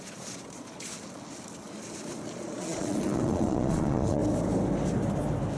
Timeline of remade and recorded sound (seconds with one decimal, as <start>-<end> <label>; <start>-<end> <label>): 0.0-0.9 remade; 0.9-2.3 recorded; 2.3-4.2 remade; 4.2-5.6 recorded